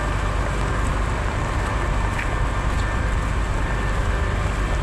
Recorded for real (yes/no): yes